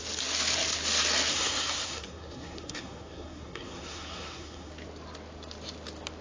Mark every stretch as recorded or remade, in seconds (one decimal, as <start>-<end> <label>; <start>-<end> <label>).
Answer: 0.0-1.3 recorded; 1.3-4.7 remade; 4.7-6.2 recorded